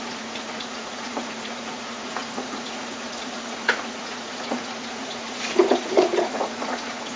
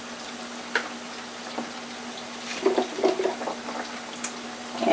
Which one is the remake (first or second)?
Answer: first